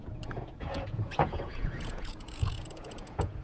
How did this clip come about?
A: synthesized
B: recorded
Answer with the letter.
A